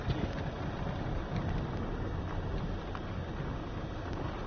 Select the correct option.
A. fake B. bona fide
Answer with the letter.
B